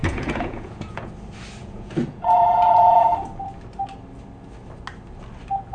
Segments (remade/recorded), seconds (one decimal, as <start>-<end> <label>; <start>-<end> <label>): 0.0-1.1 remade; 1.1-1.6 recorded; 1.6-3.1 remade; 3.1-5.7 recorded

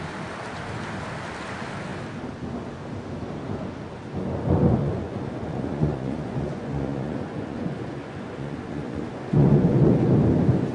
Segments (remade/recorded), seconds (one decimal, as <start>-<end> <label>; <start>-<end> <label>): 0.0-4.8 recorded; 4.8-10.1 remade; 10.1-10.7 recorded

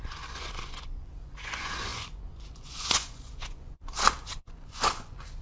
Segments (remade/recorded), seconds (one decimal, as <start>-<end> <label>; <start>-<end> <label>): 0.0-5.4 remade

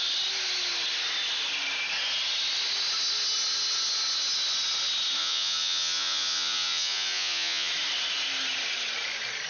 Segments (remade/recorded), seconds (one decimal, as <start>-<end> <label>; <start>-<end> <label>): 0.0-5.2 recorded; 5.2-7.7 remade; 7.7-9.5 recorded

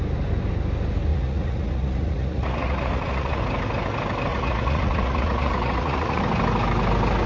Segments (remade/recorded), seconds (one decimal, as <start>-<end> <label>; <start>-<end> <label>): 0.0-1.1 recorded; 1.1-3.4 remade; 3.4-4.3 recorded; 4.3-6.2 remade; 6.2-7.3 recorded

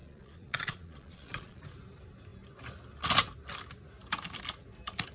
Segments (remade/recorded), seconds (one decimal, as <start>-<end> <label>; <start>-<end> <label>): 0.0-1.6 remade; 1.6-5.1 recorded